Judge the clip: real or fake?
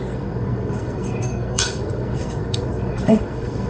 fake